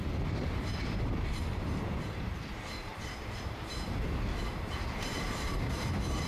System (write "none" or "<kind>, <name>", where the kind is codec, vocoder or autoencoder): vocoder, BigVGAN v2